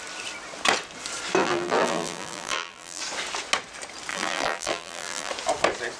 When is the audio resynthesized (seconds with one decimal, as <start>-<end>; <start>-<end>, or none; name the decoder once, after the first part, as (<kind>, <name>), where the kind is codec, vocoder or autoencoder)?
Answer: 1.4-3.0 (vocoder, BigVGAN v2); 4.1-5.3

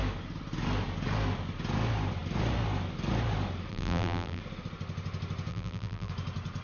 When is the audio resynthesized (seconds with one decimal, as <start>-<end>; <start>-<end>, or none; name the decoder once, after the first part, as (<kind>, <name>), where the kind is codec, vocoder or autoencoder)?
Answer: 3.7-4.4 (vocoder, BigVGAN v2); 5.5-6.1